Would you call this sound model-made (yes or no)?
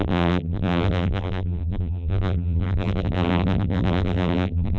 yes